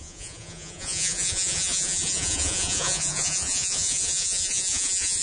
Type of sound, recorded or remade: remade